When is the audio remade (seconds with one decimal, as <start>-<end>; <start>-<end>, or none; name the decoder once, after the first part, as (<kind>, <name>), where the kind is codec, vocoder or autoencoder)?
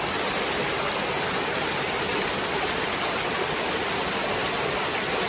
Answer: none